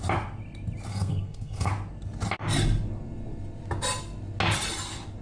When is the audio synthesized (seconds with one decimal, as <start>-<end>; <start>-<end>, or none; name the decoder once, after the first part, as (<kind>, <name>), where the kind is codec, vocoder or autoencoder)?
0.9-1.7 (codec, SNAC)